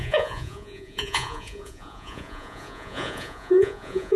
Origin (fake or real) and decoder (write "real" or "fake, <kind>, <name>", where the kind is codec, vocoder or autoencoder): fake, vocoder, Vocos